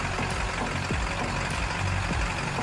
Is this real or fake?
real